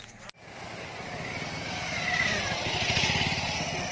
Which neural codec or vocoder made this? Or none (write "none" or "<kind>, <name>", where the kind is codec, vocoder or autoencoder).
none